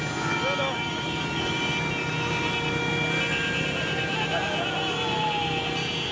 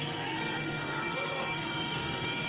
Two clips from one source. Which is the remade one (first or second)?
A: second